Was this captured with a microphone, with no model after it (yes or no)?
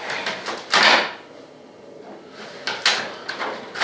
yes